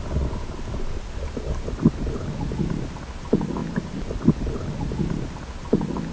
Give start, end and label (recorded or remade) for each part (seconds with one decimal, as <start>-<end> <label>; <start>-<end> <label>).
0.0-6.1 recorded